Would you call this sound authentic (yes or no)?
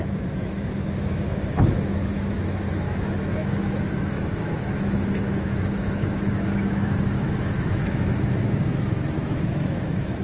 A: no